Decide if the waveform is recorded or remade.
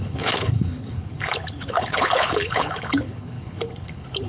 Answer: remade